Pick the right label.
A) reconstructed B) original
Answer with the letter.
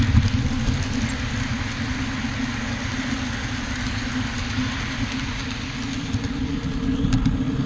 B